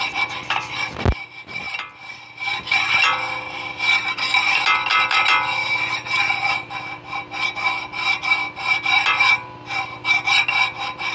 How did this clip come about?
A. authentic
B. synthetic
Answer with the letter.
A